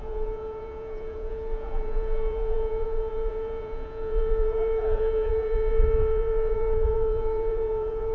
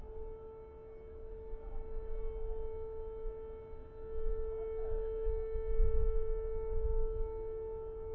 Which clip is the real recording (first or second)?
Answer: second